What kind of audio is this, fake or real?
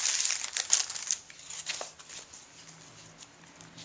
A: real